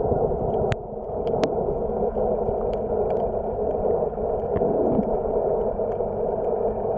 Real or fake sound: real